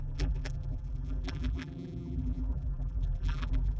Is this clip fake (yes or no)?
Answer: yes